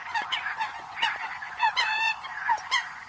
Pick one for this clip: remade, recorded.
remade